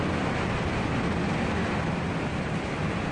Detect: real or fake real